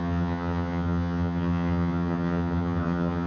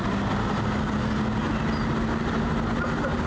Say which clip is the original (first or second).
second